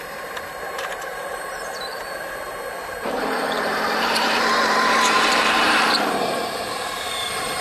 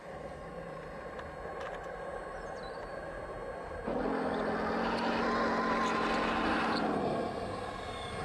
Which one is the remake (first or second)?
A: first